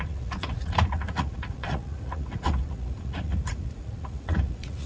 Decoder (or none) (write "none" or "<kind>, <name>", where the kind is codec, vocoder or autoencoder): vocoder, Vocos